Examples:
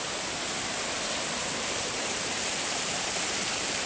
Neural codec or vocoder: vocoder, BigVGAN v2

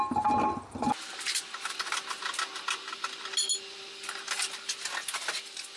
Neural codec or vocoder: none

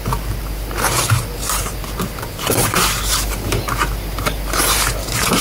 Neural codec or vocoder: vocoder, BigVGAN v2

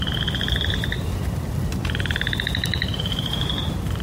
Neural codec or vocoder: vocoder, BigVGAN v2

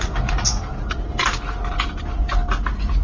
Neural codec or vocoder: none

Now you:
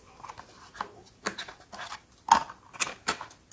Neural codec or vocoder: none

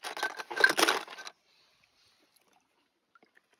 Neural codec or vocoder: none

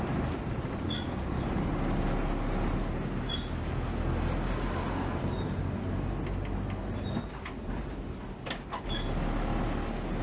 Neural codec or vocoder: none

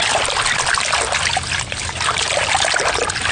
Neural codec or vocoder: none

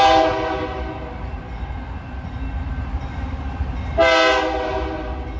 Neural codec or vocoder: none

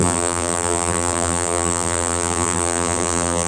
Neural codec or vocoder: vocoder, BigVGAN v2